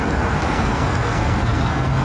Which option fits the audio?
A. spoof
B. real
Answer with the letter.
A